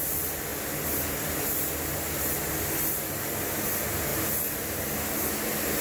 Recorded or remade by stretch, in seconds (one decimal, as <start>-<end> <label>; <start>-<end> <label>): 0.0-5.8 recorded